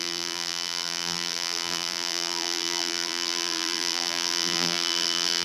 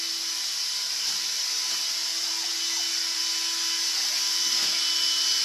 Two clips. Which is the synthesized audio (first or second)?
first